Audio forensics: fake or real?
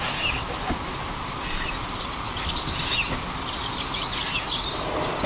real